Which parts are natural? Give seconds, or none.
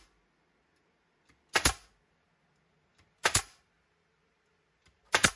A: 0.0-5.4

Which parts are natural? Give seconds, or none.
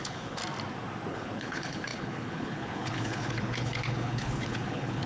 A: 0.4-1.1